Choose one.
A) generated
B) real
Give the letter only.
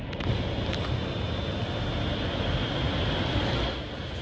B